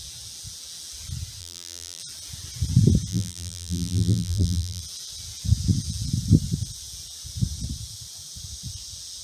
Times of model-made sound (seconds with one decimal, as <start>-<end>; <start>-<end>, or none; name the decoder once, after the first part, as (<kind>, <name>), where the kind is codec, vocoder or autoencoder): 1.4-2.0 (vocoder, BigVGAN v2); 3.1-4.8